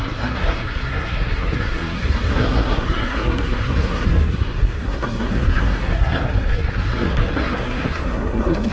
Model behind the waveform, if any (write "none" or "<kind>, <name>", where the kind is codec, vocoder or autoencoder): codec, SNAC